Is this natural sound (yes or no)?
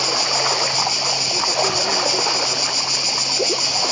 yes